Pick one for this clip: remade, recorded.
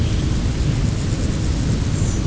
recorded